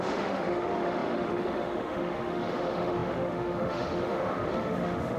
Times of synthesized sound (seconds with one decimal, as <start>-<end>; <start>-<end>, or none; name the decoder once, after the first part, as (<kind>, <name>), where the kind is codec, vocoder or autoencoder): 0.0-5.2 (autoencoder, DAC-VAE)